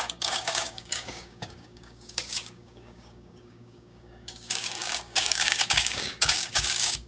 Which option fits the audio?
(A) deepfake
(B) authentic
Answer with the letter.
A